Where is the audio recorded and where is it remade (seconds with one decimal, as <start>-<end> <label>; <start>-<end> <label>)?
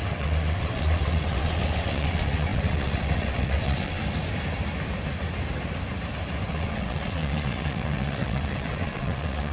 0.0-4.0 remade; 4.0-6.5 recorded; 6.5-9.5 remade